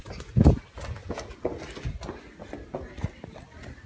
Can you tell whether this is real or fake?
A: real